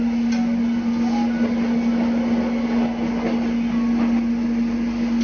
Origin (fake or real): real